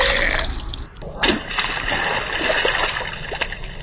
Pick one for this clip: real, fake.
real